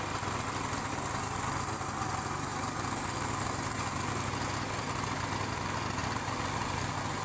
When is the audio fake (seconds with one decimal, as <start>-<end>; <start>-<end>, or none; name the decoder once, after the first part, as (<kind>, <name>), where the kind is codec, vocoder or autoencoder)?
none